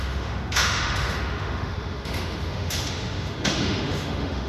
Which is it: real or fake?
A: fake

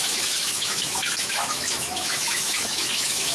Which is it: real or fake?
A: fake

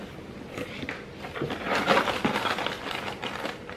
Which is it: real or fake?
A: real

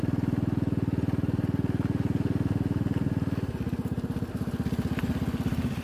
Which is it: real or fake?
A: real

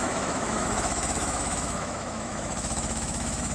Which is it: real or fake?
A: fake